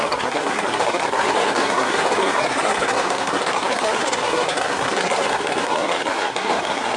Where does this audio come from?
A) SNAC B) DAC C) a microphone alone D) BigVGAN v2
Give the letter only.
A